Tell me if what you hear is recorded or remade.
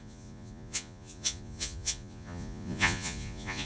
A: remade